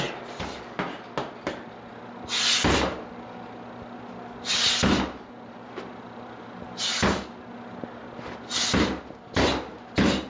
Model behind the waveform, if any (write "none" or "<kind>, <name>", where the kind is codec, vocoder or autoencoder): none